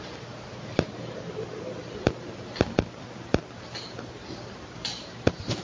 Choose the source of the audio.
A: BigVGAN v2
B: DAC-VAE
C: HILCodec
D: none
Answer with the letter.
D